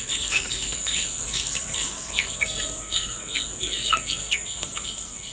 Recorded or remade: remade